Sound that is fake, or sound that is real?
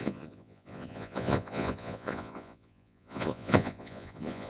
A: fake